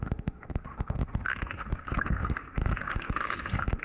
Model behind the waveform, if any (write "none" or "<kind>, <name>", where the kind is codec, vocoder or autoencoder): autoencoder, DAC-VAE